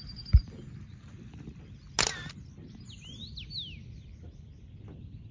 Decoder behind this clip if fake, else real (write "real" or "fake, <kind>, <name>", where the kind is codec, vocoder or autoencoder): real